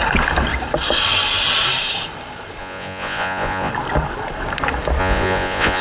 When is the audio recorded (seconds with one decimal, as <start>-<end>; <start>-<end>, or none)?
0.0-2.6; 3.7-5.0